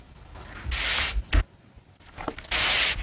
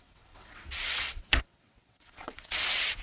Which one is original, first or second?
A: first